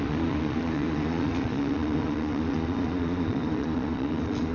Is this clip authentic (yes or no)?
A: no